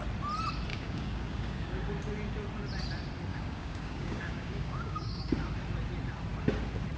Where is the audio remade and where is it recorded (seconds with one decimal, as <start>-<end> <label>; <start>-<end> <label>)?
0.0-0.7 recorded; 0.7-1.8 remade; 1.8-3.3 recorded; 3.3-5.3 remade; 5.3-7.0 recorded